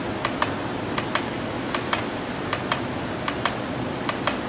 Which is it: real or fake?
real